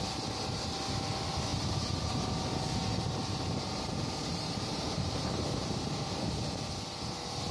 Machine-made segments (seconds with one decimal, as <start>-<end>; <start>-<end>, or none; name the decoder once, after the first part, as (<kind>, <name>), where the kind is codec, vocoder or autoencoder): 1.5-2.2 (vocoder, BigVGAN v2); 2.9-6.1